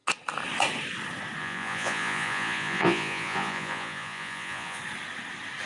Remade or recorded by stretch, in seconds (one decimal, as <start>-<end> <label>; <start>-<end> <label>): 0.0-1.4 recorded; 1.4-4.8 remade; 4.8-5.7 recorded